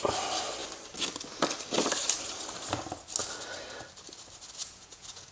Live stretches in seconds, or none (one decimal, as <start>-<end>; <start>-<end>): 0.0-4.6